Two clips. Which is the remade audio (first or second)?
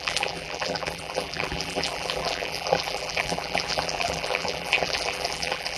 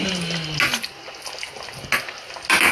first